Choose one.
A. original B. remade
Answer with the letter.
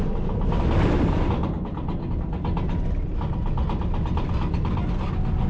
A